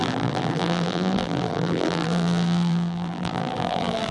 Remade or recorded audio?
remade